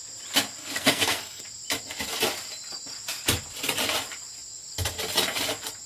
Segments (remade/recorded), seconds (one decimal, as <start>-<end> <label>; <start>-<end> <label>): 0.0-0.6 recorded; 0.6-1.4 remade; 1.4-5.9 recorded

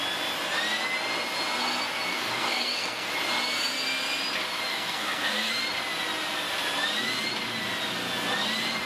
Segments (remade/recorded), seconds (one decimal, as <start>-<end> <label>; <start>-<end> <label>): 0.0-2.1 recorded; 2.1-3.1 remade; 3.1-4.7 recorded; 4.7-5.5 remade; 5.5-8.9 recorded

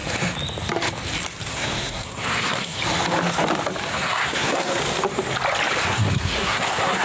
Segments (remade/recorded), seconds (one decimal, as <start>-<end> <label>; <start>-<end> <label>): 0.0-1.5 recorded; 1.5-2.8 remade; 2.8-3.9 recorded; 3.9-4.8 remade; 4.8-5.8 recorded; 5.8-7.0 remade